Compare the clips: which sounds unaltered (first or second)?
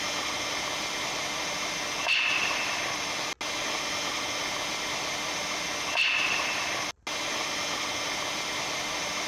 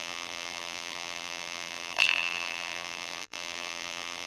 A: first